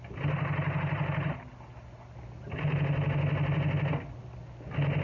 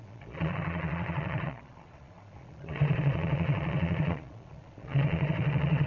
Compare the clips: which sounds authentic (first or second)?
first